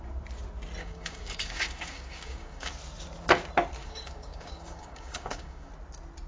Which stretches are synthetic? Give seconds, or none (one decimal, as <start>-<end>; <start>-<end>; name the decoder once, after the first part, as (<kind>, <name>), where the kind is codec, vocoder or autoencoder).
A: 0.8-2.7 (codec, DAC); 3.8-5.7